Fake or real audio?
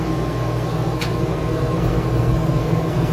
fake